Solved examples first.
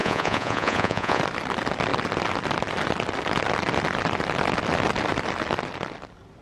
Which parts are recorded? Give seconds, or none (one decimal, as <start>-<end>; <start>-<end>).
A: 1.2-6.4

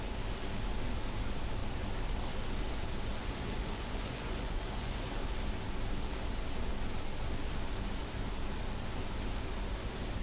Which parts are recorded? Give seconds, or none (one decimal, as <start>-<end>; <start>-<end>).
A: 0.0-3.2; 5.2-10.2

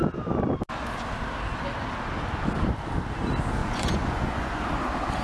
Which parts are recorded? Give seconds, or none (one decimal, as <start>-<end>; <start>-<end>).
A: 0.0-3.6; 4.6-5.2